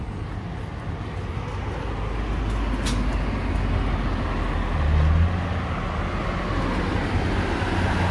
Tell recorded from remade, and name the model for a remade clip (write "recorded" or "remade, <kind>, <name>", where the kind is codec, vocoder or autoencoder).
recorded